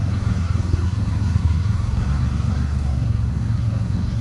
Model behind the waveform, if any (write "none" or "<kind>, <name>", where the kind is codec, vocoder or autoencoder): codec, SNAC